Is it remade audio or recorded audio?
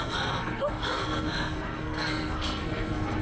remade